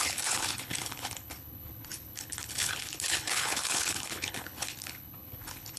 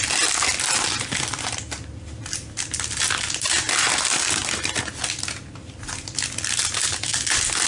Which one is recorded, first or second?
second